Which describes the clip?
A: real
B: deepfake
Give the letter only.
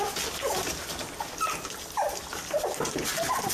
A